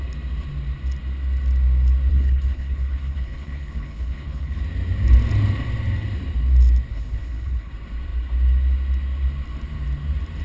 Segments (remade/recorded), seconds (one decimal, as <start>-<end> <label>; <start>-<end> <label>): 0.0-2.1 recorded; 2.1-4.6 remade; 4.6-6.9 recorded; 6.9-7.7 remade; 7.7-10.4 recorded